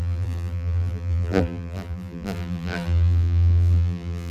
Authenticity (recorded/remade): remade